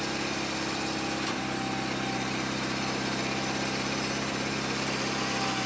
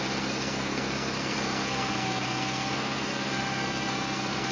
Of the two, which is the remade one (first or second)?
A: second